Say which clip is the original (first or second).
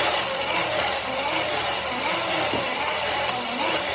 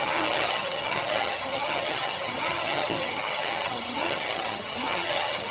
first